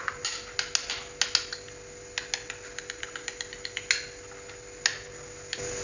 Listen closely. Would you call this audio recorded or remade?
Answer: recorded